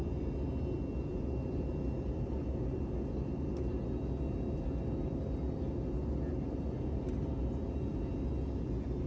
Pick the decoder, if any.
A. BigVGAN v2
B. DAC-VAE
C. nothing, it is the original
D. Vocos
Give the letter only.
C